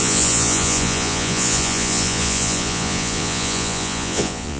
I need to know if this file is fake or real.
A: fake